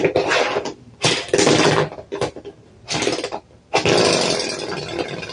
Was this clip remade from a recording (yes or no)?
no